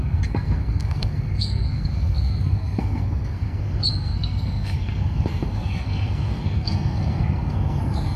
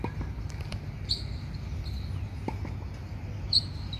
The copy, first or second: first